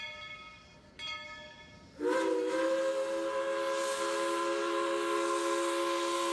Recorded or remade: recorded